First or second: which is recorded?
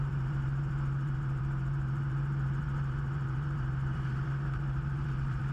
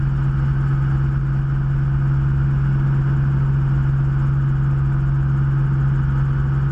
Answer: second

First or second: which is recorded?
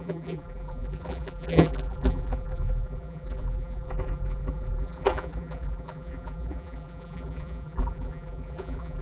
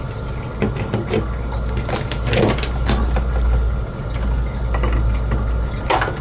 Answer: second